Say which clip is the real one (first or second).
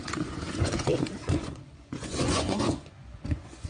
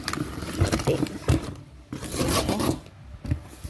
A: second